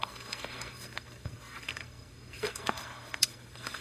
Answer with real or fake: fake